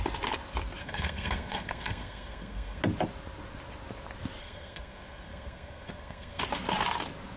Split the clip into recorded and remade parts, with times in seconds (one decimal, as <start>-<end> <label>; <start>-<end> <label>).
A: 0.0-0.8 recorded; 0.8-2.8 remade; 2.8-4.4 recorded; 4.4-6.4 remade; 6.4-7.4 recorded